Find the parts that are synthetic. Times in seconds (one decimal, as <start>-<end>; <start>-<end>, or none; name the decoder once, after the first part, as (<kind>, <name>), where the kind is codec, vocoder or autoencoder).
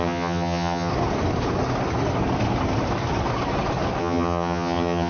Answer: 0.0-0.9 (vocoder, HiFi-GAN); 4.0-5.1